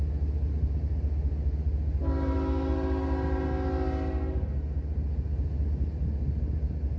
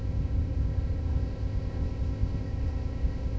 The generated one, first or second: second